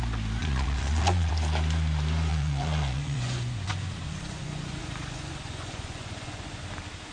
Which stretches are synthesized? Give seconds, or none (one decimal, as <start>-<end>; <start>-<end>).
0.4-1.3; 2.3-6.6

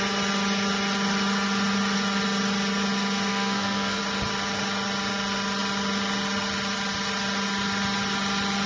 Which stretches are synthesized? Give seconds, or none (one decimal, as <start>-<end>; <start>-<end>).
3.3-4.0

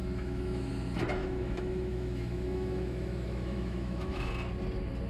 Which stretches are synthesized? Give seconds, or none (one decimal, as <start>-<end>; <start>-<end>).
0.0-0.7; 1.2-4.3

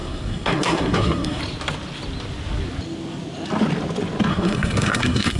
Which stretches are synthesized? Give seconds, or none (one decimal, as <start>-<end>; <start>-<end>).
0.0-1.4; 4.3-5.4

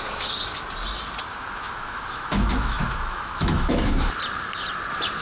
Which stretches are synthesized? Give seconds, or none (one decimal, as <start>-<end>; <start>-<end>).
1.3-4.1

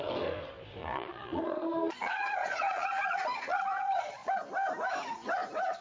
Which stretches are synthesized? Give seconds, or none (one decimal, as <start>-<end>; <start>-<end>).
0.8-4.3

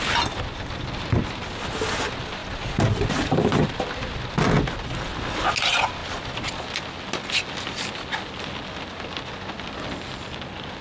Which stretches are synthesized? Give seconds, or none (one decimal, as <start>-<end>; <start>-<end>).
2.4-4.1

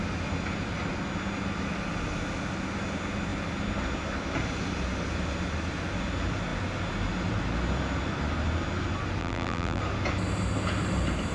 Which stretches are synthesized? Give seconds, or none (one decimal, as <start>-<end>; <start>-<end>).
9.2-9.8